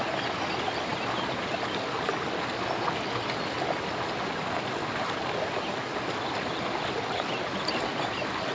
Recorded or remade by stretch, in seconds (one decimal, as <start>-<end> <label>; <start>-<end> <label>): 0.0-8.5 recorded